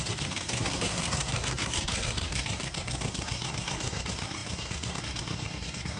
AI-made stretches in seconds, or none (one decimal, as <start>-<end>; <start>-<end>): 0.0-6.0